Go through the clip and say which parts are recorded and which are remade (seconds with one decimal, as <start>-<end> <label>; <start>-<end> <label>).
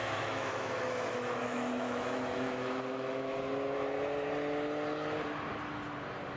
0.0-3.5 remade; 3.5-6.4 recorded